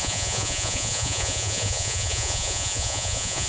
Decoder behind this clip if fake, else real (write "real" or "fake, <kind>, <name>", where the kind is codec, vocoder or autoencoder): fake, vocoder, Vocos